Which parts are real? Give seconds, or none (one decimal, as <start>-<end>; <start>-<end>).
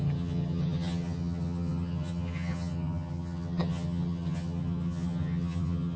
none